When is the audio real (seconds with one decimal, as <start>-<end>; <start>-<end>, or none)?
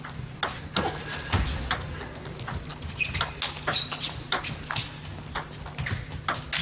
0.0-6.6